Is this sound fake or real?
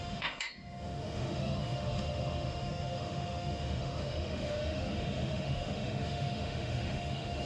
fake